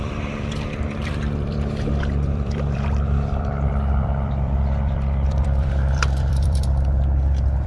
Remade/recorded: remade